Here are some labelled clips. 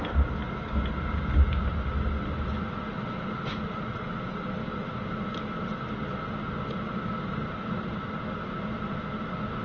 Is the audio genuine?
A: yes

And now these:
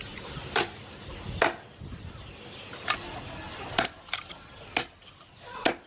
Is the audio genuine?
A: yes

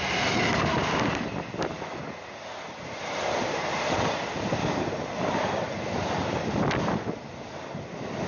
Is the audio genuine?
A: yes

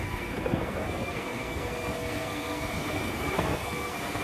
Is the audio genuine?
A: no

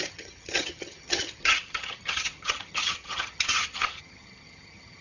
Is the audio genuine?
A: no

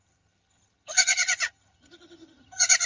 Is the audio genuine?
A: no